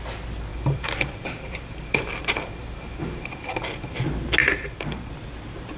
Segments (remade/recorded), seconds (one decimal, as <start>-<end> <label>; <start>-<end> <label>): 0.0-0.5 recorded; 0.5-4.0 remade; 4.0-4.4 recorded; 4.4-5.1 remade; 5.1-5.8 recorded